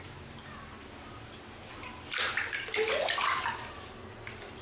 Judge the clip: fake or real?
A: real